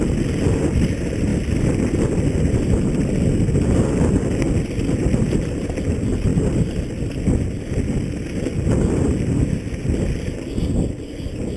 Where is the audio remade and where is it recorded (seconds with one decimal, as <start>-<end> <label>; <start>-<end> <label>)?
0.0-1.3 recorded; 1.3-3.2 remade; 3.2-11.6 recorded